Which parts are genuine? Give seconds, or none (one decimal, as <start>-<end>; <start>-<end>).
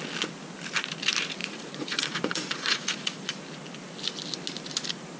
0.0-1.4; 3.3-5.2